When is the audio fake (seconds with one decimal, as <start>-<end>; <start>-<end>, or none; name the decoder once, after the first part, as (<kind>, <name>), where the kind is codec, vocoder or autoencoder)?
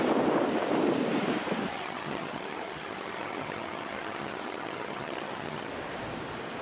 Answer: 1.7-5.7 (vocoder, HiFi-GAN)